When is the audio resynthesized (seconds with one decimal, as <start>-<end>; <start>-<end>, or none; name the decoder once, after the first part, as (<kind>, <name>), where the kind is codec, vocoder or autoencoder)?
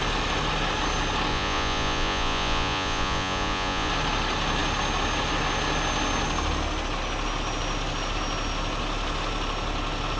1.3-3.9 (vocoder, Vocos)